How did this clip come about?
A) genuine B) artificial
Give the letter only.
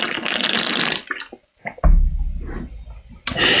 A